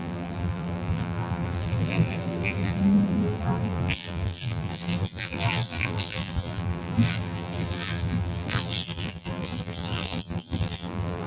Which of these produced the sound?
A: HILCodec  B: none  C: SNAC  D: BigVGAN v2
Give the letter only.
D